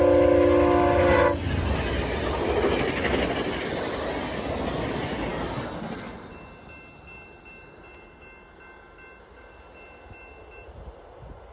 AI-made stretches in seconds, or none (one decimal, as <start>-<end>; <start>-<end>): none

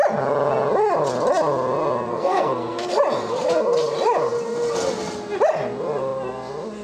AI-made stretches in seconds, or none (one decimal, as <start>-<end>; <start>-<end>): 2.1-3.0